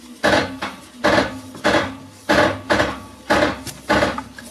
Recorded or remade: recorded